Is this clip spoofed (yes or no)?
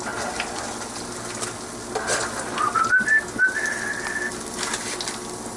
no